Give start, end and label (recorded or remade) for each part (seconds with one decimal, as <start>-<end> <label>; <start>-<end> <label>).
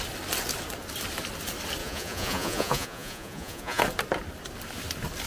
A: 0.0-1.8 recorded; 1.8-3.8 remade; 3.8-5.3 recorded